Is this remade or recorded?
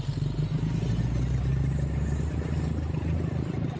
recorded